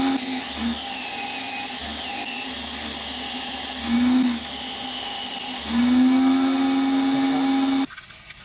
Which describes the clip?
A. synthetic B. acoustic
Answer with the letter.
B